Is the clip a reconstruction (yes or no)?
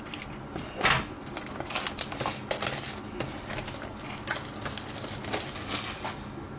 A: no